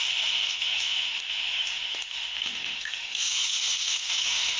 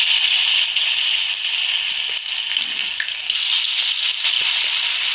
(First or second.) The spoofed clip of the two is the first